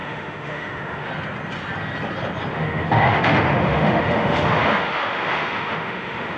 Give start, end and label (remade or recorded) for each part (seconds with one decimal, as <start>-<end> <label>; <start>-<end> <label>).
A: 0.0-1.1 remade; 1.1-2.5 recorded; 2.5-6.4 remade